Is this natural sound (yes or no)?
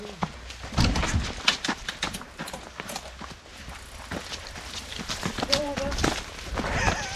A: yes